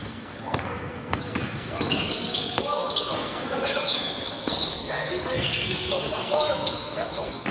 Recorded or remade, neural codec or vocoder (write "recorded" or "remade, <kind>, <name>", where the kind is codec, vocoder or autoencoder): remade, codec, SNAC